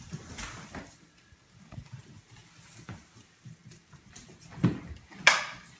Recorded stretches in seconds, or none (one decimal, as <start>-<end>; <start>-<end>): 0.0-5.8

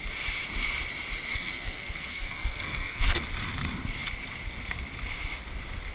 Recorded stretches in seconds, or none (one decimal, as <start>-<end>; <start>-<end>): 0.0-1.3; 3.3-5.9

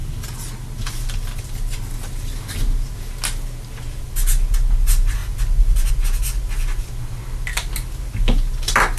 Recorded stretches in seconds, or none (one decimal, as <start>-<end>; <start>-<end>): 0.0-9.0

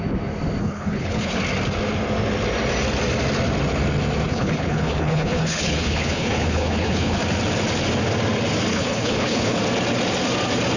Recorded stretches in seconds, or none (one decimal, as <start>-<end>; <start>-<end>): 0.0-0.6; 1.4-4.3; 7.2-8.7; 9.6-10.8